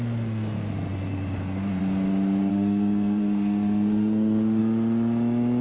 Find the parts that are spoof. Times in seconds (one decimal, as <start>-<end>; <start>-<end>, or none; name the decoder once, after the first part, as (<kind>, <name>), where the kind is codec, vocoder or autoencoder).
2.5-4.6 (codec, SNAC)